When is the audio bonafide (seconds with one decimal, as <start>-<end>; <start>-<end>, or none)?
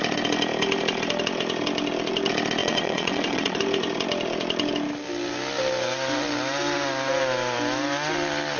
0.0-2.6; 3.6-8.6